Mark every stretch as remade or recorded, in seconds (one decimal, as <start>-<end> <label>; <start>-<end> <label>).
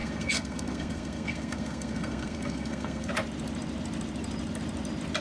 0.0-3.1 remade; 3.1-5.2 recorded